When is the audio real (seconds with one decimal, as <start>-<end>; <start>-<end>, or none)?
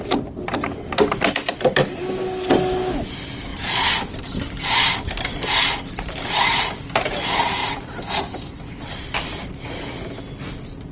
0.0-3.5; 5.5-7.6; 10.2-10.9